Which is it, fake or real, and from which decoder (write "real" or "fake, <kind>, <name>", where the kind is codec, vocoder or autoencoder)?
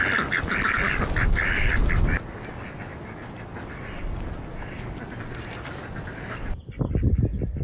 real